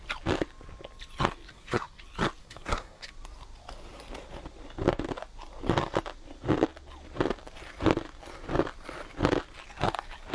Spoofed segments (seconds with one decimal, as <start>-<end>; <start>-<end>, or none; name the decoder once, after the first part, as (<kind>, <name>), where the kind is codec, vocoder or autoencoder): 1.5-2.0 (codec, SNAC); 2.4-3.1